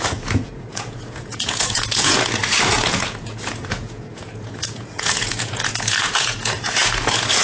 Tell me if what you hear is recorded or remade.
remade